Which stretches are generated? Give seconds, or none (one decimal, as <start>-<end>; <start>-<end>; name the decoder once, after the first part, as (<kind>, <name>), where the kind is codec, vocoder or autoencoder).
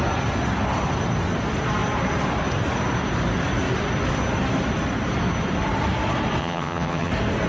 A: 6.4-7.1 (vocoder, HiFi-GAN)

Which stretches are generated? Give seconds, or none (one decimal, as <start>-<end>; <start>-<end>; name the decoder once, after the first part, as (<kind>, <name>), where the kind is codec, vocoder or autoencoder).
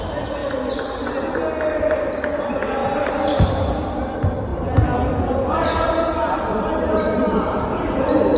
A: none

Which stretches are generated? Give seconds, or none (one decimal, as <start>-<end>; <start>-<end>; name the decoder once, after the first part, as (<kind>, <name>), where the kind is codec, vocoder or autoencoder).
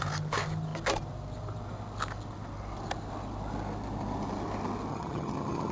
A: 4.9-5.7 (vocoder, HiFi-GAN)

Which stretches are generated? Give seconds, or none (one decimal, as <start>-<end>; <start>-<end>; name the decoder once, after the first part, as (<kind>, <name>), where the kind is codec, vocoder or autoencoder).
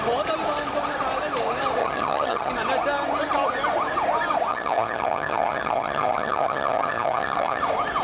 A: 1.8-2.5 (vocoder, HiFi-GAN); 4.5-7.6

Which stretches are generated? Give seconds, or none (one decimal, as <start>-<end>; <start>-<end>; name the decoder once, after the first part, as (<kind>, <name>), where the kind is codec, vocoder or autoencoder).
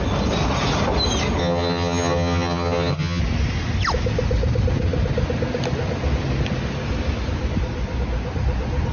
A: 1.4-3.2 (vocoder, HiFi-GAN)